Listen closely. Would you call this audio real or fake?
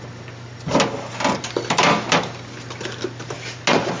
real